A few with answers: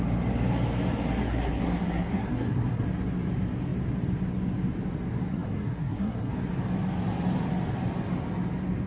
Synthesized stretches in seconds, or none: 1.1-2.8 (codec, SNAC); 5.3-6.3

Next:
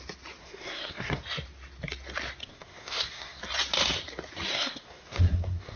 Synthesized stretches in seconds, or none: 0.4-1.2 (codec, SNAC); 2.4-3.4; 4.5-5.8

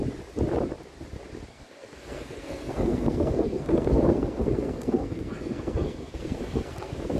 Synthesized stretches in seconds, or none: 1.5-7.2 (codec, SNAC)

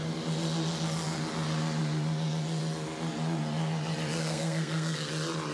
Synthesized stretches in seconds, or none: 4.2-5.1 (codec, SNAC)

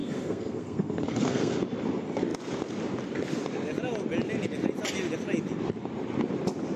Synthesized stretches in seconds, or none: 0.0-1.6 (codec, SNAC)

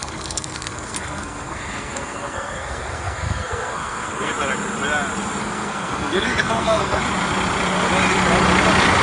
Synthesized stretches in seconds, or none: 0.0-4.3 (codec, SNAC); 5.4-7.0